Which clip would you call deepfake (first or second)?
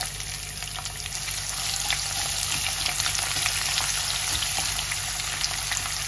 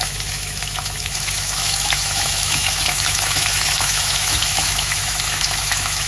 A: second